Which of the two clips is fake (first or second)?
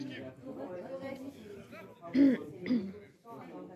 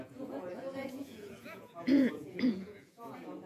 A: second